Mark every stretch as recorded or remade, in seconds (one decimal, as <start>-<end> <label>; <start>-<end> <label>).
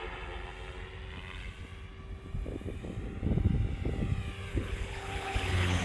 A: 0.0-4.5 recorded; 4.5-5.8 remade